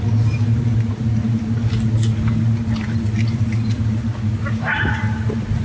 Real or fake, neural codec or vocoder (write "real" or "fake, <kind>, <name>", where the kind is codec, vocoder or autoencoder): real